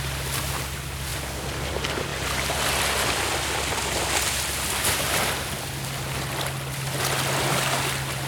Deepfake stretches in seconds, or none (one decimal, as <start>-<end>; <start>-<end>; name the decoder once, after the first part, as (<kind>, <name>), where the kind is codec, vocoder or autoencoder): 0.0-2.1 (vocoder, BigVGAN v2); 7.0-8.3